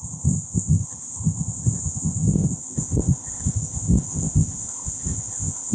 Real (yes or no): no